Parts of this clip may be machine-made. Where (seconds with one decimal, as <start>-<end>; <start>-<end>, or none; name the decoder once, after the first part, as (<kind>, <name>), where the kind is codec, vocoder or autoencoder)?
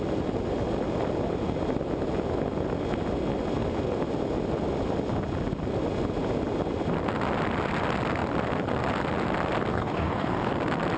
9.7-10.5 (codec, DAC)